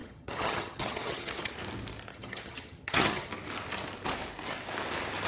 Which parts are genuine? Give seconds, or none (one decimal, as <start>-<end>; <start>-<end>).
1.5-2.1; 3.3-5.3